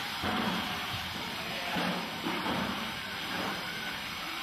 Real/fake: fake